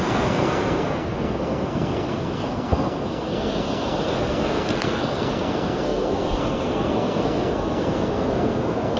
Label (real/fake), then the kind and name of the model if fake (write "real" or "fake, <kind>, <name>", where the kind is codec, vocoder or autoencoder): fake, codec, SNAC